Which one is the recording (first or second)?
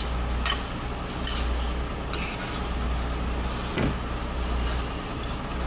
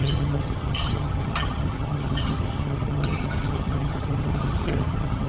first